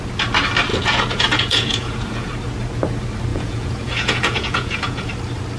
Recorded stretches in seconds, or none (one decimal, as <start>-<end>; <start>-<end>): 0.0-0.7; 2.3-3.3; 5.1-5.6